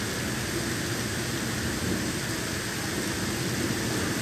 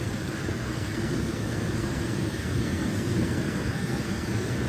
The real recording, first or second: first